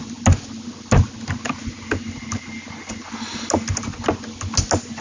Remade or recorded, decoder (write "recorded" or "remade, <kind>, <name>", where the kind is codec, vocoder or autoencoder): recorded